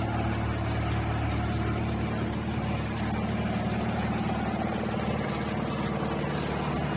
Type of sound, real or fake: real